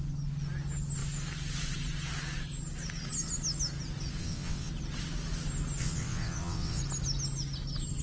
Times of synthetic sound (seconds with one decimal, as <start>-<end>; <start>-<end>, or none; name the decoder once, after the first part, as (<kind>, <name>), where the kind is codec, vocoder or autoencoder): 4.2-4.7 (vocoder, WaveNeXt); 5.8-6.8